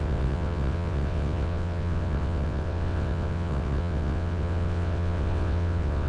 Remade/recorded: remade